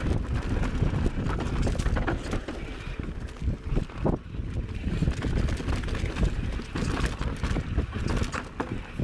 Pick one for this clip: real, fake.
real